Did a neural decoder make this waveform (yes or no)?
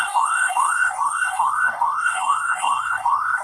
yes